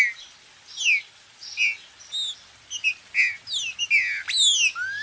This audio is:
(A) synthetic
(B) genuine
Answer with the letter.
B